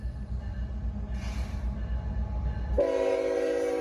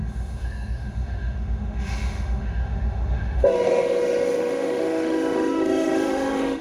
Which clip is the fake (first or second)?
second